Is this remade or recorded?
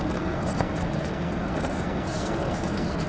remade